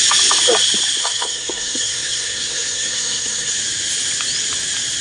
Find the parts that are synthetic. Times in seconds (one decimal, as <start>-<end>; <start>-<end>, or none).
1.0-3.5